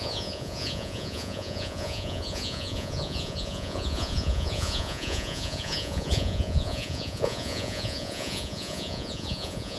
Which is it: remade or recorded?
remade